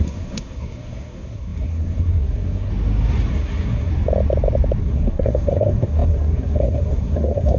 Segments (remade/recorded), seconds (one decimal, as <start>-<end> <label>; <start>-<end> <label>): 0.0-2.7 remade; 2.7-3.3 recorded; 3.3-3.9 remade; 3.9-4.8 recorded; 4.8-7.6 remade